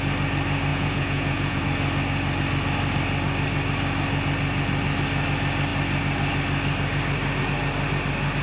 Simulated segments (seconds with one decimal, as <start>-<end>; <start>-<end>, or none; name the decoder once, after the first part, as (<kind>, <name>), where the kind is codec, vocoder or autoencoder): 0.7-1.6 (vocoder, Vocos)